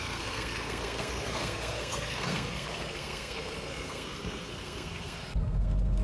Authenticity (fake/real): fake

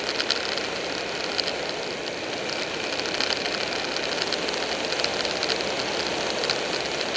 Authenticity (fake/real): real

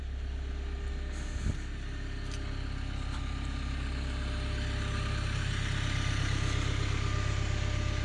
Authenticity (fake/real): real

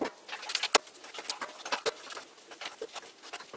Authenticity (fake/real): real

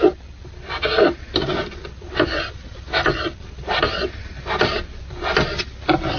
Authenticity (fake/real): real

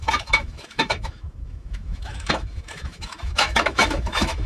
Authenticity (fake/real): fake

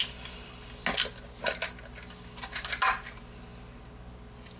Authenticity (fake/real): real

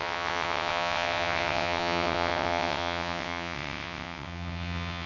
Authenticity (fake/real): fake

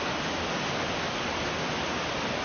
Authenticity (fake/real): real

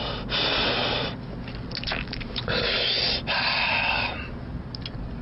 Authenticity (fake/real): real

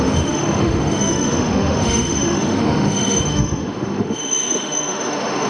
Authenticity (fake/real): fake